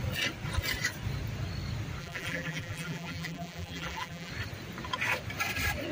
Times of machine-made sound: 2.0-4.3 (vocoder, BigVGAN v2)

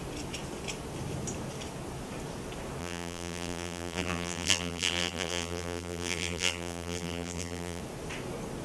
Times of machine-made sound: 2.8-7.8 (vocoder, BigVGAN v2)

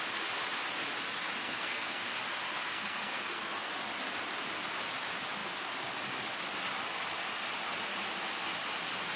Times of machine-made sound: 1.4-2.0 (codec, SNAC); 2.6-3.7